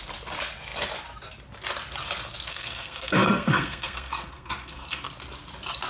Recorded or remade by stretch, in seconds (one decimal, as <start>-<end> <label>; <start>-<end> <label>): 0.0-2.5 recorded; 2.5-5.0 remade; 5.0-5.9 recorded